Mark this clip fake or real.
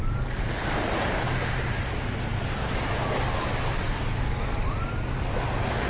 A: real